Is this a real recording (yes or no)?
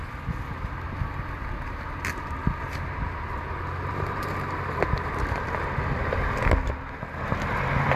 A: yes